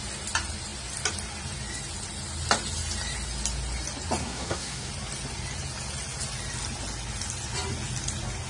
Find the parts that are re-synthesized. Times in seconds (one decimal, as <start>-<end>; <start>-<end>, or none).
4.2-4.9